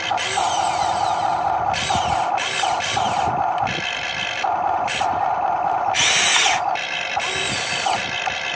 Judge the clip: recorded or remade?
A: recorded